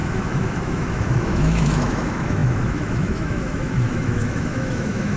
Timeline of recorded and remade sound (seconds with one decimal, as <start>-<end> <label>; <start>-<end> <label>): 0.0-5.2 remade